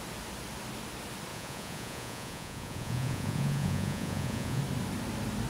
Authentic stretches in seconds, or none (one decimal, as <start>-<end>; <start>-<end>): 0.0-1.3; 4.6-5.5